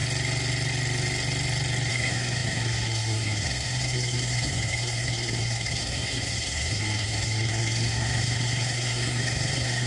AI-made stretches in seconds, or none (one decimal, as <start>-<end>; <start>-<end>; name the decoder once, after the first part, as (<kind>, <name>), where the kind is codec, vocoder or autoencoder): 1.9-9.9 (codec, SNAC)